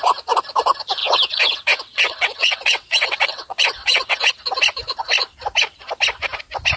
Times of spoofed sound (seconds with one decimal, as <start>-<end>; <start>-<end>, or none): 1.0-4.3